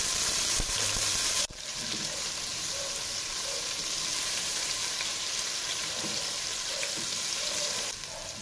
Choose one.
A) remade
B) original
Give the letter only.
A